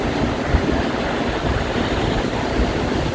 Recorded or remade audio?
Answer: recorded